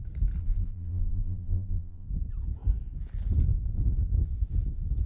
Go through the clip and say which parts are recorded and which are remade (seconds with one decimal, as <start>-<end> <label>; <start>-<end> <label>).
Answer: 0.0-0.4 recorded; 0.4-2.1 remade; 2.1-5.1 recorded